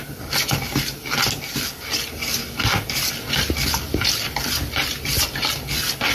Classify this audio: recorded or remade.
recorded